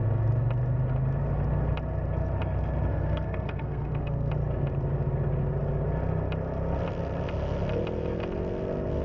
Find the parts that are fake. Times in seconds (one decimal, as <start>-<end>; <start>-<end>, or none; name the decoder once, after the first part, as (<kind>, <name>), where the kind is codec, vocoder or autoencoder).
2.9-4.3 (codec, SNAC)